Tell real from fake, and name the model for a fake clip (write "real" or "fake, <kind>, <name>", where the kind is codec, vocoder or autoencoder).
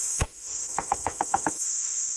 fake, autoencoder, DAC-VAE